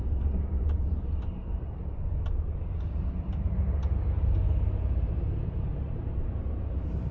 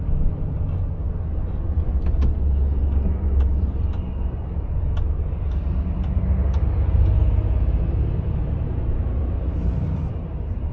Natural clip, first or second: second